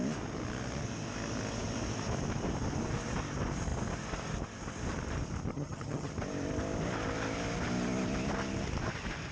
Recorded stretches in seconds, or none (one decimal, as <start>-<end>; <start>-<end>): 0.0-5.5; 6.1-9.3